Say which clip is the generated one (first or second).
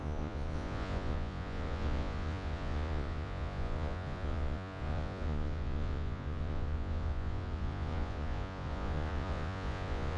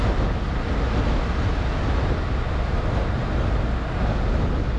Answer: first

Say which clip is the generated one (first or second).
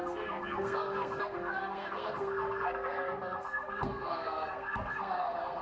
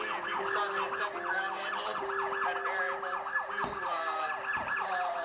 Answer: first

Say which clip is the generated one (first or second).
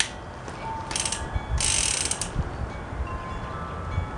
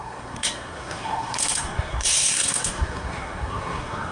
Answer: second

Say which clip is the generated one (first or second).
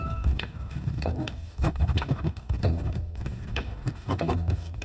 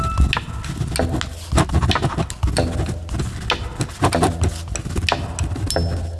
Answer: first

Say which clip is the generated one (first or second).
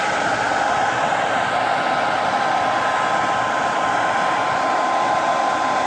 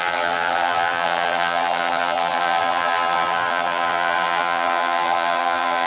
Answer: second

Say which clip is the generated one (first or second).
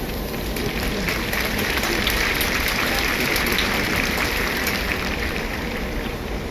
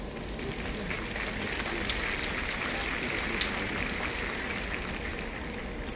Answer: first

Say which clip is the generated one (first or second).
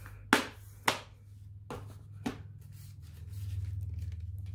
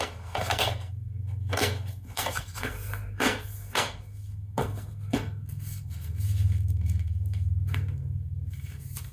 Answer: second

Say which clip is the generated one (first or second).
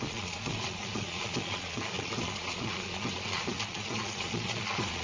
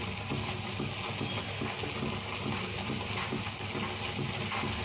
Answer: first